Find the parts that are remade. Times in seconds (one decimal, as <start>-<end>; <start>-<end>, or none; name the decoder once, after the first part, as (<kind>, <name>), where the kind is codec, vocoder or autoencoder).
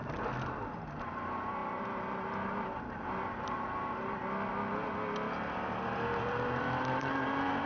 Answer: 1.0-4.2 (vocoder, BigVGAN v2); 6.2-7.7